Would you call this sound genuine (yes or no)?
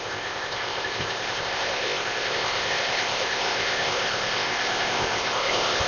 no